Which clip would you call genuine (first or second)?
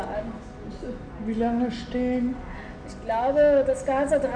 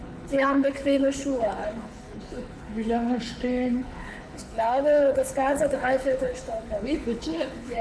first